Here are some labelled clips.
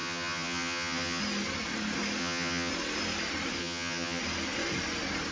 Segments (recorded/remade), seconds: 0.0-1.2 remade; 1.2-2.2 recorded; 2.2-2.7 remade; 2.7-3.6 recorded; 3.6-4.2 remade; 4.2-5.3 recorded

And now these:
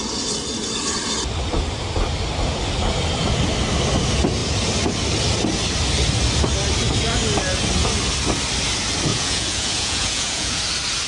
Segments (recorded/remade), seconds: 0.0-9.1 recorded; 9.1-10.6 remade; 10.6-11.1 recorded

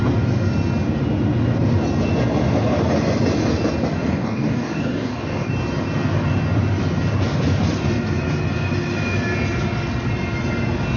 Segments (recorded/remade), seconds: 0.0-4.0 recorded; 4.0-5.5 remade; 5.5-11.0 recorded

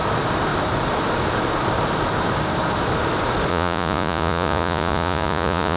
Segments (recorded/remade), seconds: 0.0-3.5 recorded; 3.5-5.8 remade

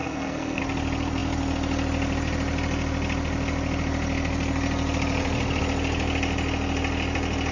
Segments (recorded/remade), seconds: 0.0-0.6 remade; 0.6-7.5 recorded

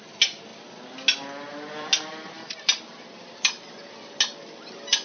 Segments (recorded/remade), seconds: 0.0-5.0 recorded